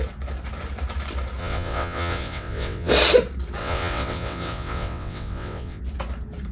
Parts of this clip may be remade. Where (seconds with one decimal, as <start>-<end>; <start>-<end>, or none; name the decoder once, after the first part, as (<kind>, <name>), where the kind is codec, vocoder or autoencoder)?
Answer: 1.4-2.9 (vocoder, WaveNeXt); 3.6-5.8